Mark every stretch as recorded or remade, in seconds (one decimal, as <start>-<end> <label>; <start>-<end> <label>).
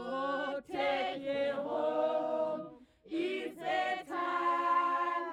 0.0-0.9 recorded; 0.9-3.4 remade; 3.4-4.2 recorded; 4.2-5.3 remade